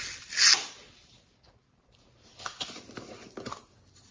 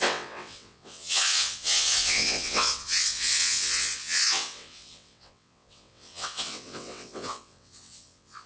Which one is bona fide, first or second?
first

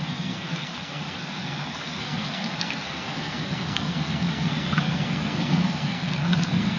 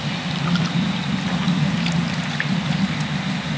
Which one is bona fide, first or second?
second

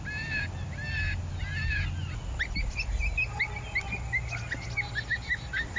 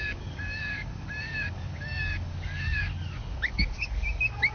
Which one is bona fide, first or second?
first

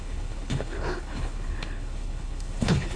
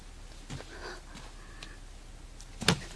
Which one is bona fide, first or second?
second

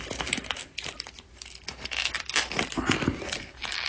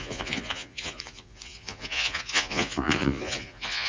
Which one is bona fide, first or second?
first